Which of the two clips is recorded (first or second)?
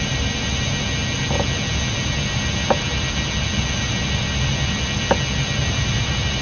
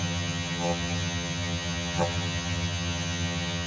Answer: first